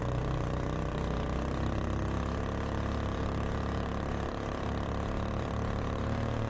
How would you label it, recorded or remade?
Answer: remade